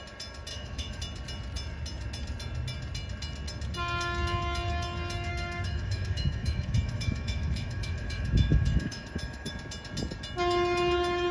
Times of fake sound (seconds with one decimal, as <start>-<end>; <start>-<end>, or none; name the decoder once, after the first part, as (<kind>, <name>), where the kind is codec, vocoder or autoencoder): 0.5-1.0 (autoencoder, DAC-VAE); 5.3-9.5